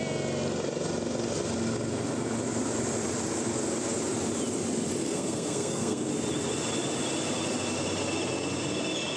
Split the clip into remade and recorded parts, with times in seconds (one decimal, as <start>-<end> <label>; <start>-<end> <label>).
0.0-5.0 recorded; 5.0-6.1 remade; 6.1-9.2 recorded